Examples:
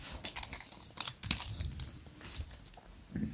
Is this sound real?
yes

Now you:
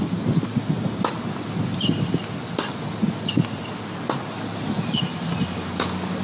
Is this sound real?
yes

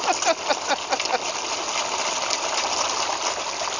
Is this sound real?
yes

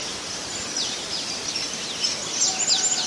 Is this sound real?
yes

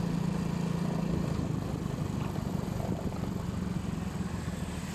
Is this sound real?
yes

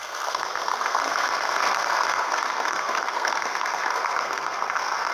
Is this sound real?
no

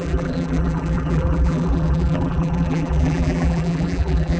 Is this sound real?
no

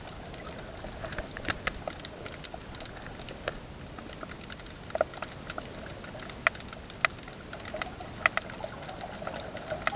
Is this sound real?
yes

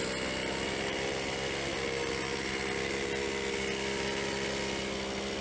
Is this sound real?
yes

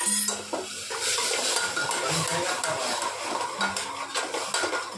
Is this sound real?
yes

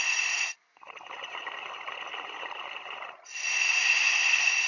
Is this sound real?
yes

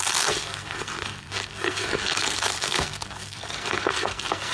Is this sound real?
no